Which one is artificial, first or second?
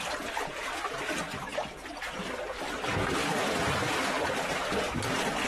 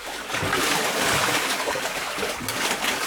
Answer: second